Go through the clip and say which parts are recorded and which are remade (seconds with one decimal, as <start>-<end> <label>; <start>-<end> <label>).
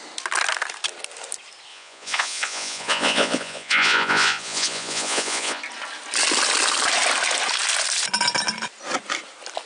0.0-1.7 recorded; 1.7-5.6 remade; 5.6-9.7 recorded